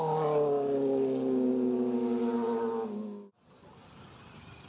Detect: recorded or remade recorded